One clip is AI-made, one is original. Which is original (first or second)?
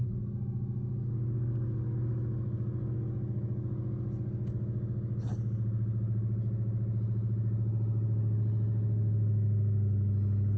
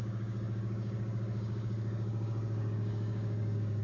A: first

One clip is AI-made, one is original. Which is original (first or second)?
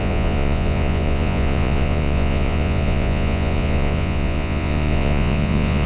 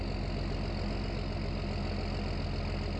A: second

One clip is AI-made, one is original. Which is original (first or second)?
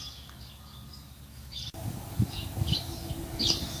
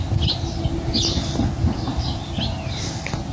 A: second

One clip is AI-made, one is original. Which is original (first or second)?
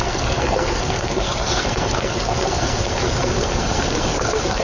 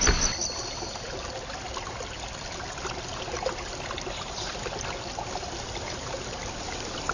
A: second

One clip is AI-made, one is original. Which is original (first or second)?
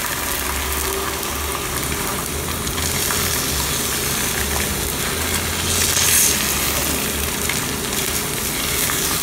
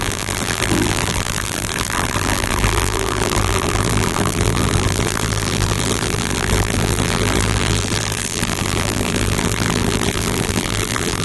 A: first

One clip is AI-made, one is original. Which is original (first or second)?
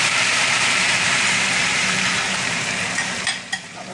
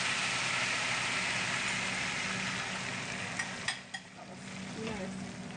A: second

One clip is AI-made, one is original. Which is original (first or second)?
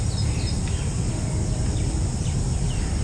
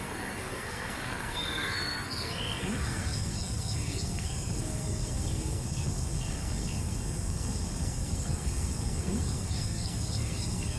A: first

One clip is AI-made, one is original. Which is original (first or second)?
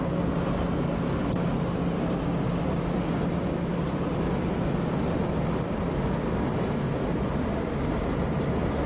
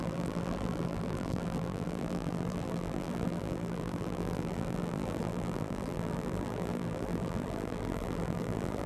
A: first